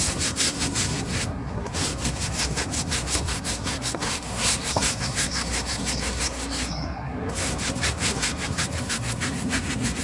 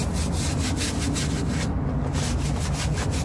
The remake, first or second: first